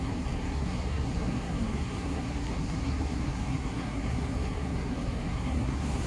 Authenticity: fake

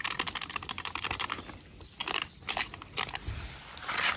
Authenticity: real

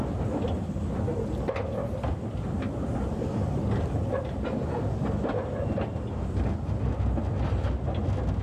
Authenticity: real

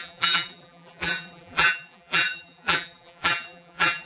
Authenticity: fake